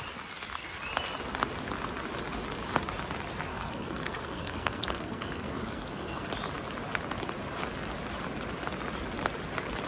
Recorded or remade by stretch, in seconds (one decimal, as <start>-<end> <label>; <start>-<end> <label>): 0.0-3.5 recorded; 3.5-6.3 remade; 6.3-9.9 recorded